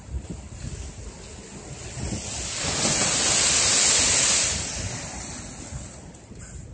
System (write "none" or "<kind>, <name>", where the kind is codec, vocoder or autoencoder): none